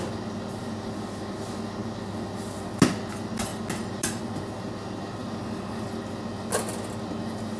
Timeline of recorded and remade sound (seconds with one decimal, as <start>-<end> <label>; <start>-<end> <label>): 0.0-7.6 recorded